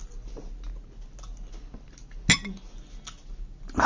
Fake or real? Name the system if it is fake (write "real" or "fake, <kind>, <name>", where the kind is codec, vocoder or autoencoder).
real